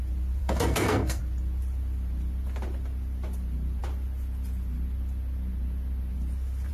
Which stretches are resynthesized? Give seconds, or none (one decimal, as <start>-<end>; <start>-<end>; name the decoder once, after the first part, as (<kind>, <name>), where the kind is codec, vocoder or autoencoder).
0.4-1.2 (codec, SNAC)